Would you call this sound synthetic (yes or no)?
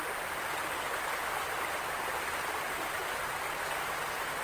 no